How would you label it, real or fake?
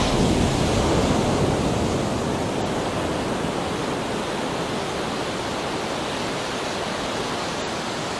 real